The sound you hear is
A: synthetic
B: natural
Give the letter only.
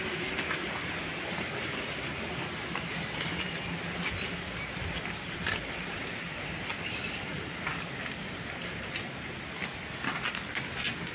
B